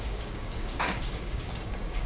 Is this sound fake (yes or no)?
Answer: yes